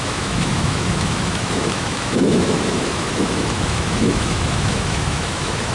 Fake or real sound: fake